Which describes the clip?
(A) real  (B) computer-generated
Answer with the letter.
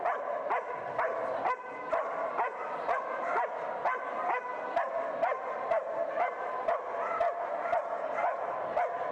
A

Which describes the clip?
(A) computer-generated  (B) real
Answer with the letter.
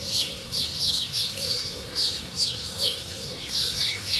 A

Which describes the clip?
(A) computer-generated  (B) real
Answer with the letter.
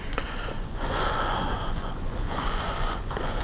A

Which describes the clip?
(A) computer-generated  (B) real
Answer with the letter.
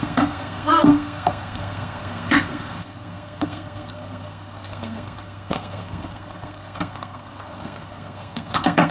A